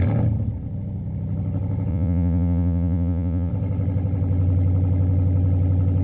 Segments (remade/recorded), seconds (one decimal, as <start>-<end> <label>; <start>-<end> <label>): 0.0-1.9 recorded; 1.9-3.5 remade; 3.5-6.0 recorded